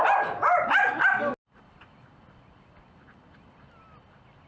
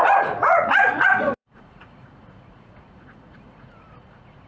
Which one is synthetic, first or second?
second